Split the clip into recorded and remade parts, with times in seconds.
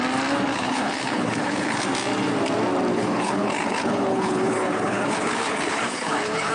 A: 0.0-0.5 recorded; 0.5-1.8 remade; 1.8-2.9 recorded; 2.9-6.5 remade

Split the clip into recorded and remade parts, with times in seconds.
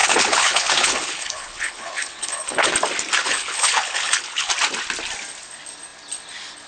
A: 0.0-2.7 remade; 2.7-3.2 recorded; 3.2-4.5 remade; 4.5-6.7 recorded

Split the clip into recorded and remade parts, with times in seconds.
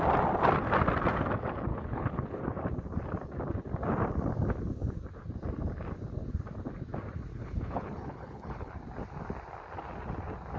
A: 0.0-1.7 recorded; 1.7-2.4 remade; 2.4-7.3 recorded; 7.3-8.7 remade; 8.7-10.6 recorded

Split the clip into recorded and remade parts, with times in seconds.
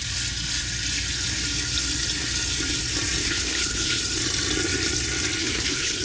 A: 0.0-3.2 recorded; 3.2-4.0 remade; 4.0-5.4 recorded; 5.4-6.0 remade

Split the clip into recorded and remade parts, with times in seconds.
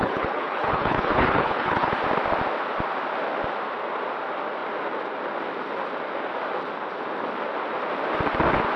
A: 0.0-1.9 remade; 1.9-8.8 recorded